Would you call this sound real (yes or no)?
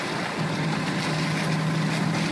yes